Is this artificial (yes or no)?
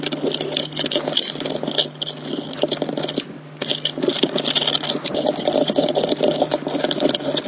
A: no